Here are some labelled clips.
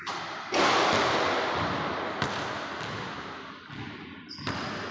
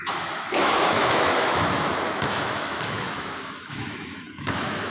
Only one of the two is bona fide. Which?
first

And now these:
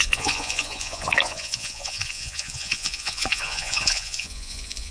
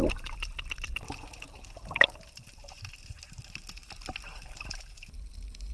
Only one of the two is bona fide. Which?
second